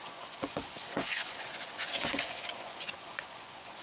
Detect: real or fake fake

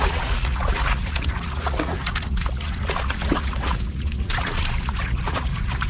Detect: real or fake fake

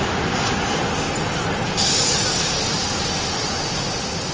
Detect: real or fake real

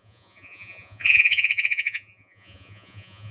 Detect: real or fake fake